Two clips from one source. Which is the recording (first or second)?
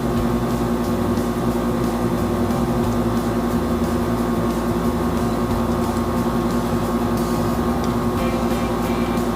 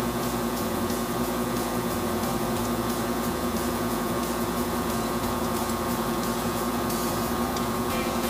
first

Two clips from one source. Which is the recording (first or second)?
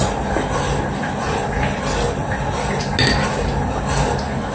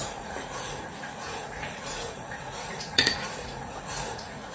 first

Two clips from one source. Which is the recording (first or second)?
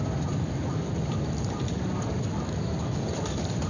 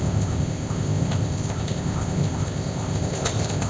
first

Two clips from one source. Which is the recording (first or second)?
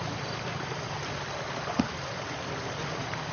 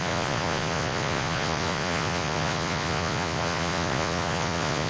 first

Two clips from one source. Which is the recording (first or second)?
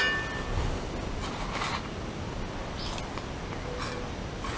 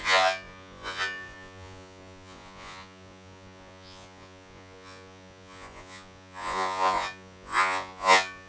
first